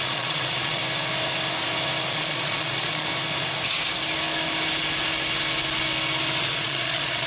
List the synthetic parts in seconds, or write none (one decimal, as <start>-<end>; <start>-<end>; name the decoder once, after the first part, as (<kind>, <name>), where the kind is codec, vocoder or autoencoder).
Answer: 0.0-0.8 (vocoder, Vocos); 2.1-3.1; 6.4-7.3